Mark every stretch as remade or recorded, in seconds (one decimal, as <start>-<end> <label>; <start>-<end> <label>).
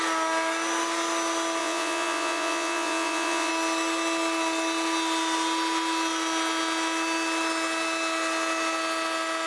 0.0-1.6 recorded; 1.6-3.5 remade; 3.5-9.5 recorded